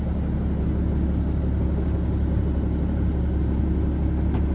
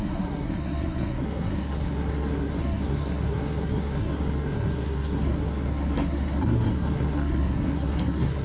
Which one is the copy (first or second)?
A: second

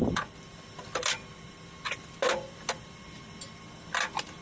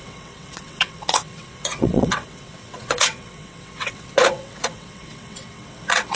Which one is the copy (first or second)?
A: second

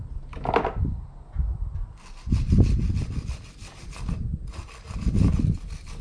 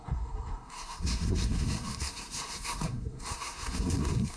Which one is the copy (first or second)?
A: second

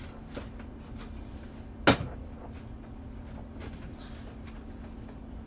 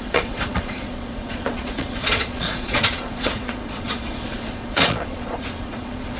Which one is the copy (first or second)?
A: second